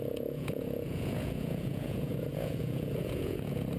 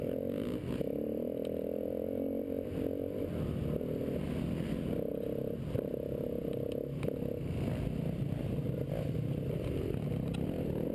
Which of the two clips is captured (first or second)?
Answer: second